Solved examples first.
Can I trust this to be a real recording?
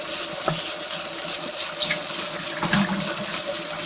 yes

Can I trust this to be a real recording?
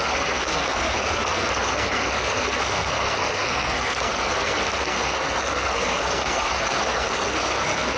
no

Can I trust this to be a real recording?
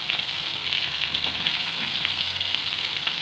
no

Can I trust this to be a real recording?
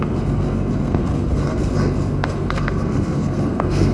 no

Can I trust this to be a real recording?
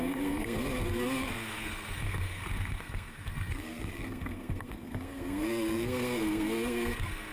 no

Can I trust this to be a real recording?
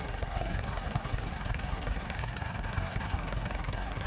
no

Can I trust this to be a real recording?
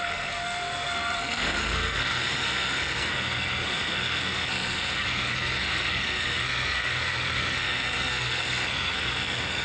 no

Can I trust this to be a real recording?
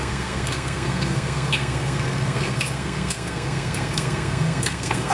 no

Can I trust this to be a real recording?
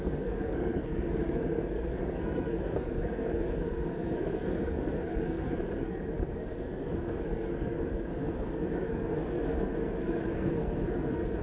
no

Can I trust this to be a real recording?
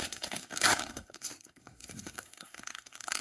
no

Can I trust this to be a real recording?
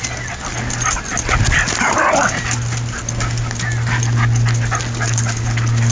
yes